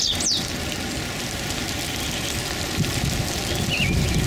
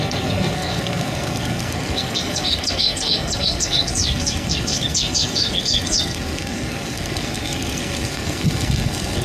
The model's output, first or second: second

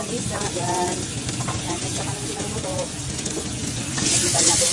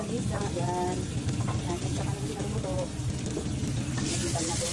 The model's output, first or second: first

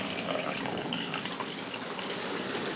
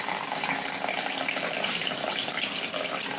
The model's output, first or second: first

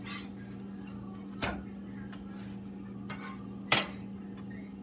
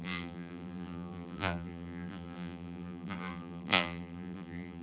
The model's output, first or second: second